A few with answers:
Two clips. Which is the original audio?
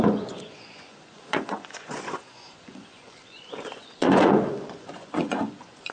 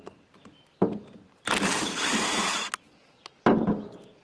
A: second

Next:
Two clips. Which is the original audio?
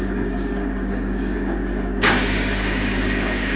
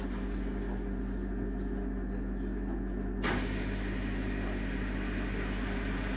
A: second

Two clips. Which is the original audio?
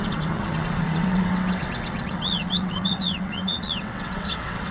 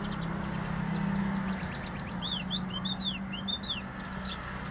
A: second